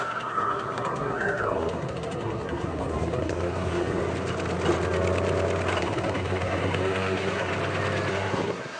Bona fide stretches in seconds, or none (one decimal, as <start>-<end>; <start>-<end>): 4.0-5.8; 7.5-8.1